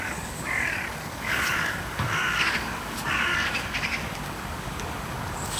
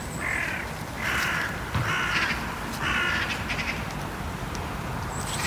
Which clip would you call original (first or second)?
second